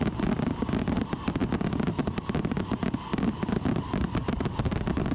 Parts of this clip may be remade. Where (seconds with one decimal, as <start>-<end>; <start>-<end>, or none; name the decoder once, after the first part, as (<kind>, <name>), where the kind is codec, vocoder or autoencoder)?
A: none